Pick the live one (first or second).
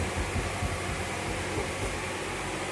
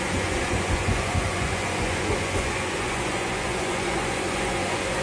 first